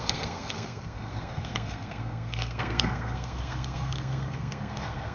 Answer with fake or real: fake